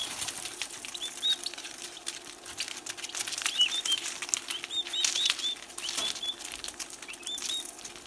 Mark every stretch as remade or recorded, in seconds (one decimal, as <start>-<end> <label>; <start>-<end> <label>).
0.0-0.7 remade; 0.7-8.1 recorded